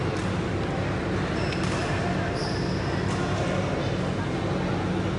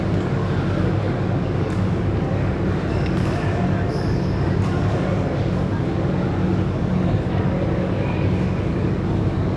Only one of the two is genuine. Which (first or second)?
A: first